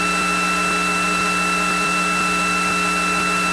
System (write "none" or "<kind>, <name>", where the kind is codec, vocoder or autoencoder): vocoder, BigVGAN v2